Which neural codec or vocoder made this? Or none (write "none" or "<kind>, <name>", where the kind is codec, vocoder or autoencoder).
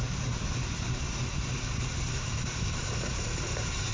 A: vocoder, BigVGAN v2